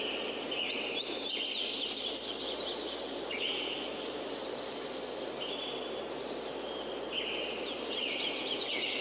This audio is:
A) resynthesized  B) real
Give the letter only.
A